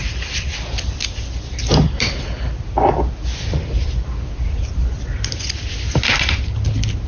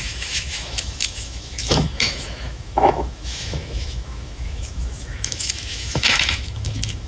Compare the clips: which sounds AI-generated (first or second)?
second